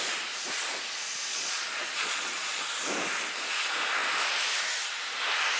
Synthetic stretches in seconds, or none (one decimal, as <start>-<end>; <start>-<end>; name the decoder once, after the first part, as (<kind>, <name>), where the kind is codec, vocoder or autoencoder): 1.3-2.7 (vocoder, Vocos)